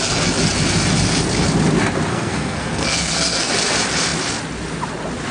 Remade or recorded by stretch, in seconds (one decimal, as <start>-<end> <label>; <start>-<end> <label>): 0.0-2.1 recorded; 2.1-3.5 remade; 3.5-5.3 recorded